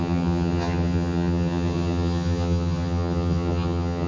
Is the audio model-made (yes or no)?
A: yes